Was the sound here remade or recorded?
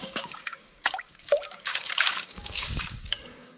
remade